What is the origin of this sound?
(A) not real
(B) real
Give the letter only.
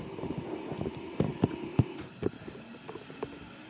B